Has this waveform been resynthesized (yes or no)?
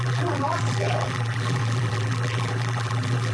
yes